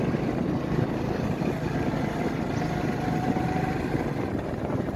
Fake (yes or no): no